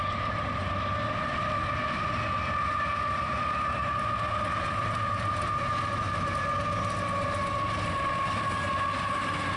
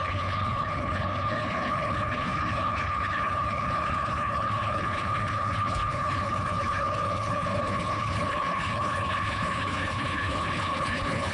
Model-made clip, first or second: second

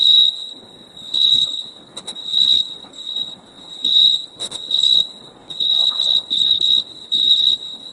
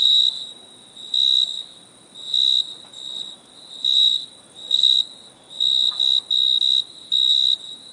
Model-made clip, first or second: first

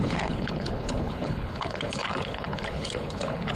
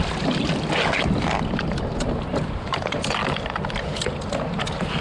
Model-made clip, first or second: first